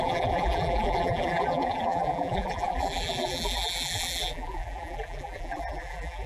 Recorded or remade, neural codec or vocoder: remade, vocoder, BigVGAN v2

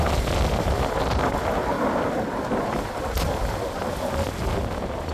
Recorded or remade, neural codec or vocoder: recorded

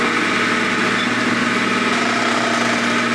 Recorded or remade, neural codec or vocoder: recorded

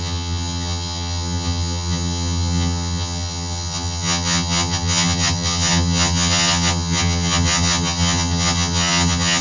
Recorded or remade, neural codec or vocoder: remade, vocoder, HiFi-GAN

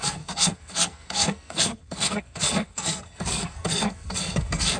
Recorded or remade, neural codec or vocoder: remade, codec, SNAC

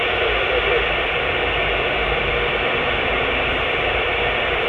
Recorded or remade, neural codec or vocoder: remade, vocoder, BigVGAN v2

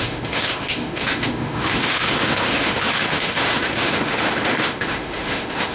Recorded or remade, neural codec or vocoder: remade, autoencoder, DAC-VAE